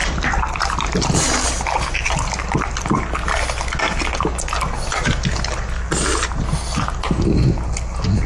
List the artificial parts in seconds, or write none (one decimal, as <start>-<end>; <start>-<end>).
0.0-1.3